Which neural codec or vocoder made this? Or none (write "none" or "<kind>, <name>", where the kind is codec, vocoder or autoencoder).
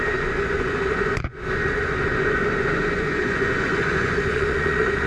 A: vocoder, Vocos